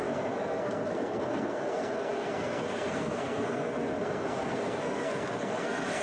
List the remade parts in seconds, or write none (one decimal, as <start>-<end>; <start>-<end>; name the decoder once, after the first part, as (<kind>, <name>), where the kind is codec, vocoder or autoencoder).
0.0-6.0 (codec, SNAC)